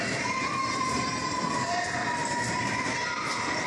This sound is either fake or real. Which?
real